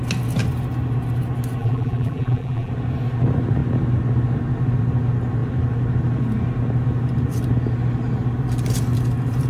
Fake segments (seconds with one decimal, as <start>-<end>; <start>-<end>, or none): 1.6-2.7